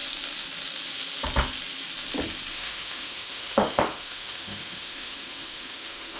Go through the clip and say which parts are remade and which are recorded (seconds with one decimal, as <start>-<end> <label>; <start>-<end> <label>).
0.0-2.5 recorded; 2.5-6.2 remade